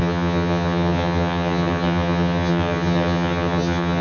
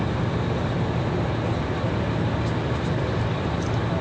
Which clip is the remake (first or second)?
first